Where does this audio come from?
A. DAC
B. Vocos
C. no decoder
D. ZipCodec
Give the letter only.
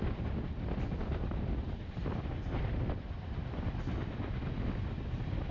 C